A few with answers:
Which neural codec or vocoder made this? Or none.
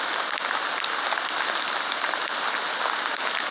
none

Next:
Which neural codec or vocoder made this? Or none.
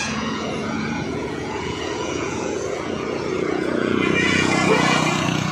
vocoder, Vocos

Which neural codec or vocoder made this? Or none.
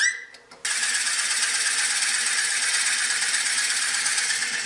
none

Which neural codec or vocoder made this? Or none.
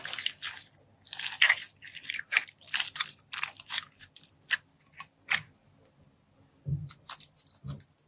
none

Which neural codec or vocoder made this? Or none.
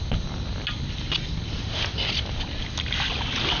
none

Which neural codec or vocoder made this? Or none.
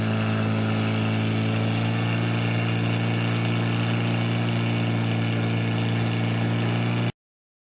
none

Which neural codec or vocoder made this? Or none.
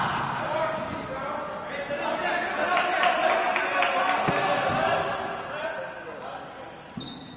none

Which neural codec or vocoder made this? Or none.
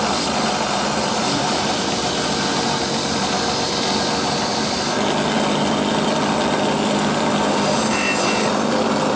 none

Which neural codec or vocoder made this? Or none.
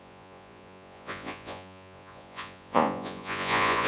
vocoder, Vocos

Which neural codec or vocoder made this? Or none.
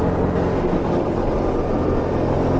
none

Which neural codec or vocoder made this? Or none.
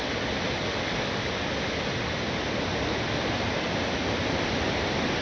none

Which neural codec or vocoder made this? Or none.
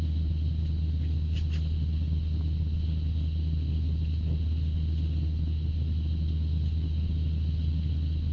none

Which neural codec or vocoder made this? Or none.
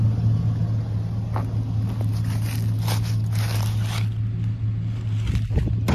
none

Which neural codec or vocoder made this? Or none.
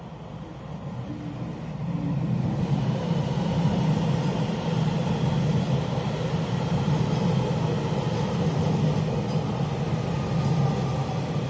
none